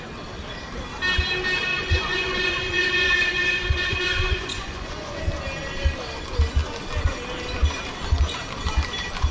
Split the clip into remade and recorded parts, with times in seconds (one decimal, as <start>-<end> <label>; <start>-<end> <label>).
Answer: 0.0-1.7 recorded; 1.7-5.2 remade; 5.2-9.3 recorded